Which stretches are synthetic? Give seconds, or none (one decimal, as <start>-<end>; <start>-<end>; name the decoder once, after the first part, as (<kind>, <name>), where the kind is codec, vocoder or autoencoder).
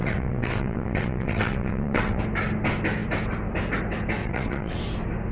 0.0-2.2 (vocoder, WaveNeXt); 4.2-4.8